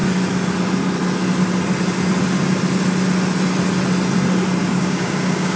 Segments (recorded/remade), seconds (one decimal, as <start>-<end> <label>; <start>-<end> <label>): 0.0-4.6 recorded; 4.6-5.6 remade